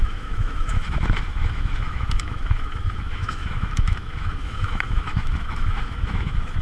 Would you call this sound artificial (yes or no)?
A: yes